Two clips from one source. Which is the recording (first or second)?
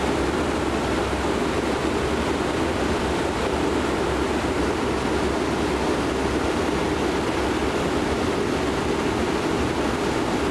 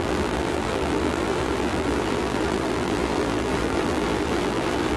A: first